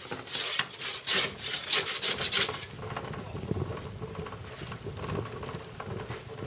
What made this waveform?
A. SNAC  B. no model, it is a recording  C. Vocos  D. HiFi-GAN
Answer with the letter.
B